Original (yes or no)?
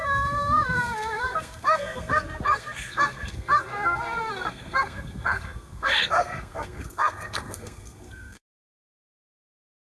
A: no